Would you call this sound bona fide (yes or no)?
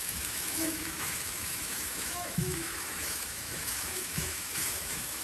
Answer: no